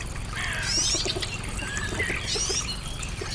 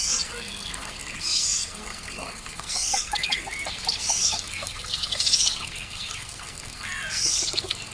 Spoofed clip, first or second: second